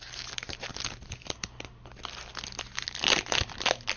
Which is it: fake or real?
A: real